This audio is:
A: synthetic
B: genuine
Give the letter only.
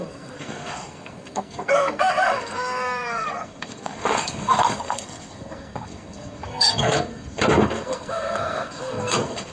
A